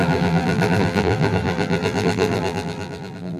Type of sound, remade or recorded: remade